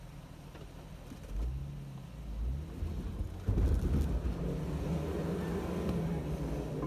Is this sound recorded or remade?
recorded